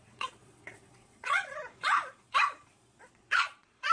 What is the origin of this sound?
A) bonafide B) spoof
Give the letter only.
B